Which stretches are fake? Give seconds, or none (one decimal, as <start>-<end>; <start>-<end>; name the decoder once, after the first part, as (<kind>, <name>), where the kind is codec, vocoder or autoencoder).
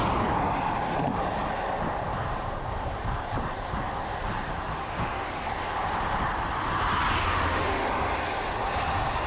4.8-5.5 (autoencoder, DAC-VAE); 7.2-7.9